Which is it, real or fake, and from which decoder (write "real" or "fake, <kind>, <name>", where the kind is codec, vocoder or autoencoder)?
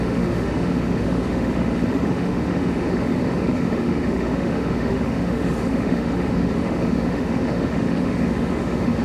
fake, autoencoder, DAC-VAE